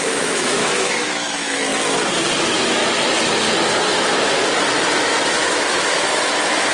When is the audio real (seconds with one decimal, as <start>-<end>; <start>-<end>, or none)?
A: 1.7-2.4; 2.8-3.9; 4.4-5.3